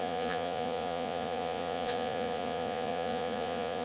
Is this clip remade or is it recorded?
remade